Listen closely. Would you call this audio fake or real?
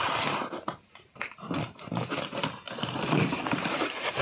fake